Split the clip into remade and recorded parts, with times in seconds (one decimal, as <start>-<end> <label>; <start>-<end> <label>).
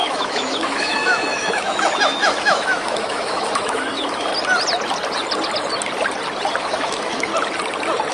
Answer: 0.0-4.3 remade; 4.3-6.6 recorded; 6.6-7.3 remade; 7.3-8.1 recorded